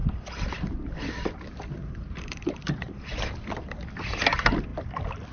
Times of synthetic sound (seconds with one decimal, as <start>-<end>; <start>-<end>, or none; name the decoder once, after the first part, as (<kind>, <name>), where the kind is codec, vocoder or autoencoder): 1.8-3.3 (vocoder, BigVGAN v2)